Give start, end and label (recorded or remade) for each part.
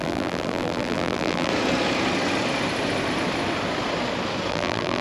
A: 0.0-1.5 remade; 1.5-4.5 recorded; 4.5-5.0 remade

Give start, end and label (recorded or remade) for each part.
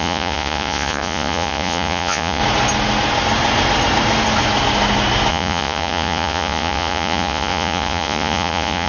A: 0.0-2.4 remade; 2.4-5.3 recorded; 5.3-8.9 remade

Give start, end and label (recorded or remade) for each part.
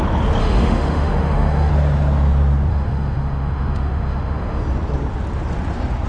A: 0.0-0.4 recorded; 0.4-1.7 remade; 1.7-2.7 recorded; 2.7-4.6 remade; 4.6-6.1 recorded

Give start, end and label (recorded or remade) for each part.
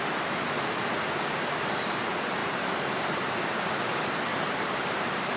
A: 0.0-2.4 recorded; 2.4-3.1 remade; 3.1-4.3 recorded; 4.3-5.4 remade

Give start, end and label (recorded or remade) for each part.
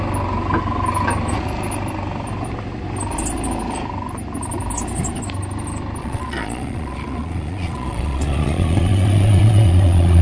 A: 0.0-6.0 recorded; 6.0-10.2 remade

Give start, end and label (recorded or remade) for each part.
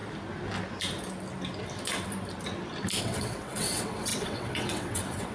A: 0.0-3.0 recorded; 3.0-5.3 remade